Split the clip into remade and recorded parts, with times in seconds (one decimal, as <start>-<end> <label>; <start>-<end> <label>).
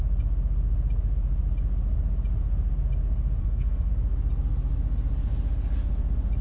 0.0-3.4 recorded; 3.4-3.9 remade; 3.9-6.4 recorded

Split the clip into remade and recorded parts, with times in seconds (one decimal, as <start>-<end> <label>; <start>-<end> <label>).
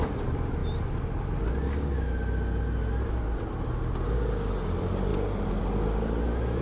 0.0-6.6 recorded